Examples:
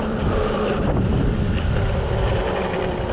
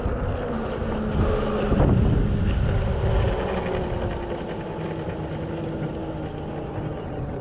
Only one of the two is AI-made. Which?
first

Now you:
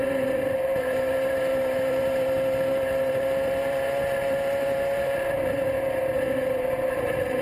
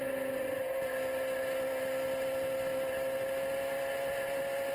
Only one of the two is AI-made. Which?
first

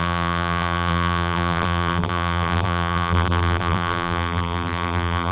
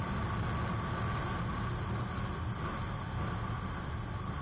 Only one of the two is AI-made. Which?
first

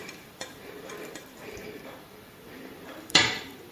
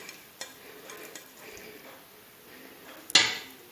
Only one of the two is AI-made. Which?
first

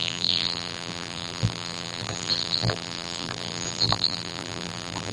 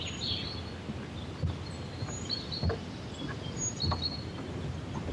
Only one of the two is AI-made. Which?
first